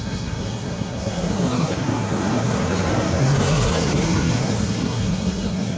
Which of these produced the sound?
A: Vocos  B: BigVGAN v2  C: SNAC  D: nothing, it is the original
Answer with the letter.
C